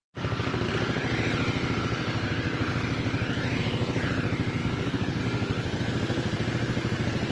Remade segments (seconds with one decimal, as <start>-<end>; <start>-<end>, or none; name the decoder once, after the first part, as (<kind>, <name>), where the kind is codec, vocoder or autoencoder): 0.0-0.7 (codec, DAC); 4.6-5.2

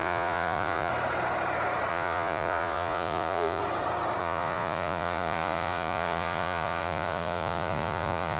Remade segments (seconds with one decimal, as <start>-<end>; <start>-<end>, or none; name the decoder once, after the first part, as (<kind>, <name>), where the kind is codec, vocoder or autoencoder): 0.0-0.9 (vocoder, Vocos); 1.9-3.6; 4.2-8.4

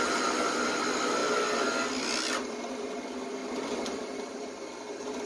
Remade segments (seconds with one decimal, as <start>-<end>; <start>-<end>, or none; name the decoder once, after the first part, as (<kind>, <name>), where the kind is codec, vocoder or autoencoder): 3.4-4.4 (vocoder, BigVGAN v2)